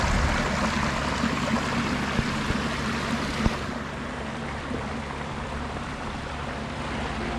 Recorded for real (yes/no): yes